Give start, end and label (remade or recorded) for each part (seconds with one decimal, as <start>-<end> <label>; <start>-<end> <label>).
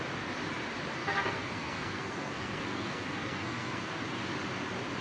0.0-1.0 recorded; 1.0-4.0 remade; 4.0-5.0 recorded